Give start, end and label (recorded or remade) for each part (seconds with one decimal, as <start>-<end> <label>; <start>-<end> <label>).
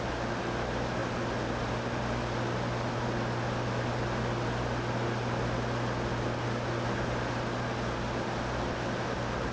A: 0.0-9.5 recorded